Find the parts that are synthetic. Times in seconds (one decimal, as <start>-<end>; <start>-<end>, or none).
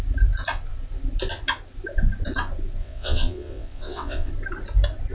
2.8-4.3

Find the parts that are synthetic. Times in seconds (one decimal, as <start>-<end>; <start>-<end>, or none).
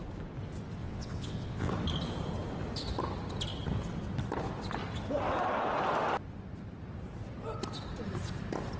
0.8-1.7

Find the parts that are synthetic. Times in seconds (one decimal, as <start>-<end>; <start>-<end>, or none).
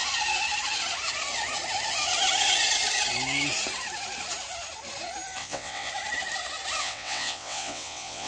5.4-5.9; 6.8-8.3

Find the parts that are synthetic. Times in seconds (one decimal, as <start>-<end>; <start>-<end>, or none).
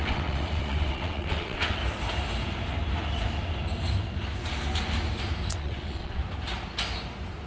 0.0-1.8; 5.5-6.2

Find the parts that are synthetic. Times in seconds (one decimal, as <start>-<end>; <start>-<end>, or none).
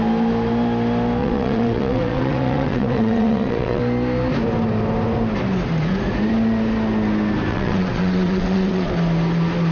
1.2-3.8; 7.5-8.9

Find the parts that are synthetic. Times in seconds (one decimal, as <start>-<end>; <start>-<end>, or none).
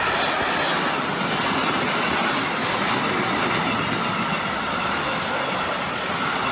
none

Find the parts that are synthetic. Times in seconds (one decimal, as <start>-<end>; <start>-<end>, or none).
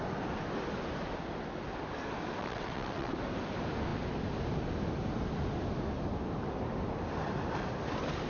2.4-3.1